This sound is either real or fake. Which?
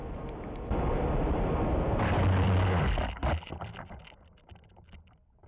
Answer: real